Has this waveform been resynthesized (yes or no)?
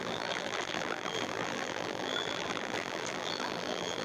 yes